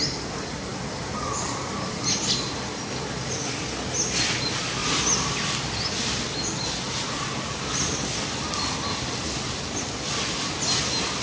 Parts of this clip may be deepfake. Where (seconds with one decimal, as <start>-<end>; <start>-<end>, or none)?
none